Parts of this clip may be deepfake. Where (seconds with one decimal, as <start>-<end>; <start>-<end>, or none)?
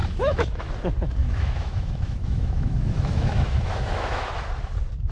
0.0-0.7; 1.2-4.3